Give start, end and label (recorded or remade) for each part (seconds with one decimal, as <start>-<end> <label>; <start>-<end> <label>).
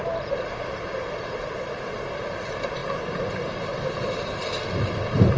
0.0-5.4 recorded